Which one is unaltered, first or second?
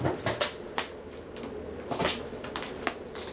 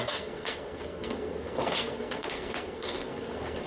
first